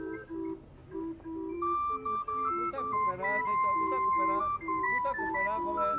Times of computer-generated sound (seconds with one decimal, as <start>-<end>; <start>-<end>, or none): none

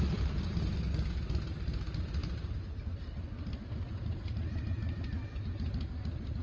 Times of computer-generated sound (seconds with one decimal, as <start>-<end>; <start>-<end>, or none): none